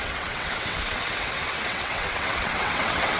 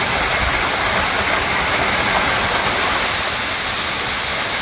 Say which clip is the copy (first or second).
first